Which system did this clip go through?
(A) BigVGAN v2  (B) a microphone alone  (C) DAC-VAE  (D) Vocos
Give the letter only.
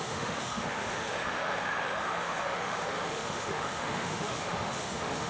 C